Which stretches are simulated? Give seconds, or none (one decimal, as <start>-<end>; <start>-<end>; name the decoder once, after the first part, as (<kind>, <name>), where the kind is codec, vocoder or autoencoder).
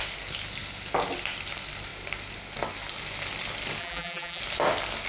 3.8-4.4 (vocoder, BigVGAN v2)